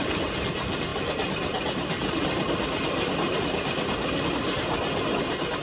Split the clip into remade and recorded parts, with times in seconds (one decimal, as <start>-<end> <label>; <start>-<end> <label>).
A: 0.0-5.6 recorded